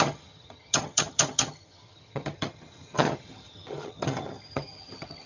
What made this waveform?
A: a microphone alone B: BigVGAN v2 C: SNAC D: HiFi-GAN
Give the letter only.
D